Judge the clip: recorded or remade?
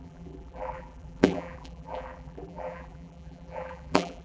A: remade